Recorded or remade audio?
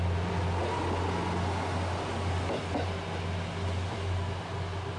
recorded